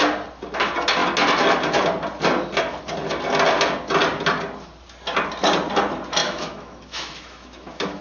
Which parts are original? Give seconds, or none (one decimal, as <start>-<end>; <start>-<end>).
0.0-6.2